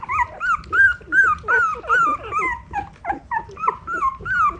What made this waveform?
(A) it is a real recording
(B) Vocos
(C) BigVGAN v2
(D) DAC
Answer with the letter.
A